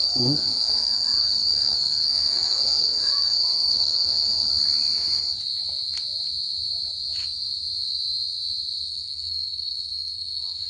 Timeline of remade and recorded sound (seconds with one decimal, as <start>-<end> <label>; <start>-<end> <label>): 0.0-4.5 remade; 4.5-8.9 recorded; 8.9-10.7 remade

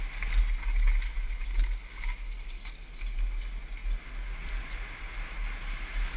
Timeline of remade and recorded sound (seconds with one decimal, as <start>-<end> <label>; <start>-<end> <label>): 0.0-6.2 recorded

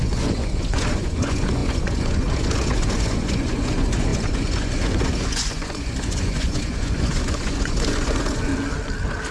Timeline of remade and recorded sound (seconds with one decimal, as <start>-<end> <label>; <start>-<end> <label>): 0.0-8.5 remade; 8.5-9.3 recorded

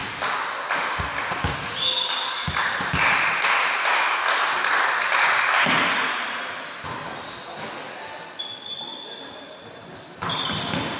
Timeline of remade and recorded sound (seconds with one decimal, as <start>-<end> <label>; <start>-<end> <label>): 0.0-11.0 recorded

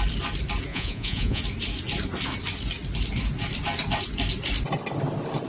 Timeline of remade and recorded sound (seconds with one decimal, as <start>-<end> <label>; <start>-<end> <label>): 0.0-0.7 recorded; 0.7-1.4 remade; 1.4-5.5 recorded

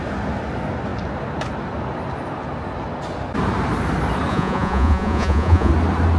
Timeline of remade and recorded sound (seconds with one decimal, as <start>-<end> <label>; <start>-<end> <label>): 0.0-4.3 recorded; 4.3-5.7 remade; 5.7-6.2 recorded